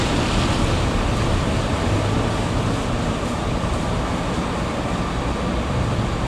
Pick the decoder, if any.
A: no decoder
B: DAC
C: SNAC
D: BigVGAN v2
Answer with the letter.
D